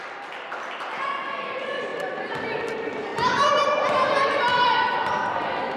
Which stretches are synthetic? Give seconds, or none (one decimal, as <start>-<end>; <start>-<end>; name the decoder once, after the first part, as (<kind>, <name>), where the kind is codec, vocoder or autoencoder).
0.0-1.9 (vocoder, BigVGAN v2); 2.4-3.1; 3.9-5.8